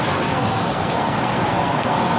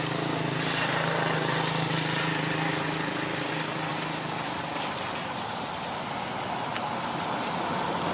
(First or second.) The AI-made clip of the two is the first